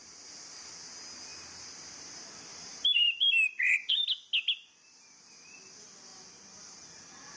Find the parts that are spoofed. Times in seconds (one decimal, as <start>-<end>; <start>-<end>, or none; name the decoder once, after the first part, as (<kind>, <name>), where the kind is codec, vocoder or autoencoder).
0.0-0.7 (vocoder, BigVGAN v2); 1.3-2.1; 2.5-4.0